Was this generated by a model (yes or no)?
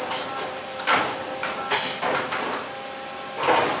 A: no